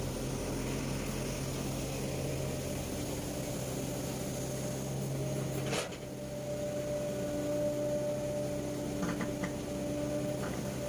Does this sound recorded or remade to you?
recorded